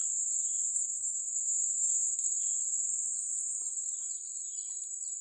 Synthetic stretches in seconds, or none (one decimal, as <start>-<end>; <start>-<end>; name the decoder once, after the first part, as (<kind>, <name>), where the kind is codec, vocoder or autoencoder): 0.7-2.4 (codec, SNAC)